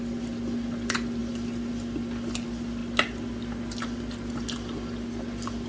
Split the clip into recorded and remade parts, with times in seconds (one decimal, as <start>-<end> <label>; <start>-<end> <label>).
0.0-5.7 recorded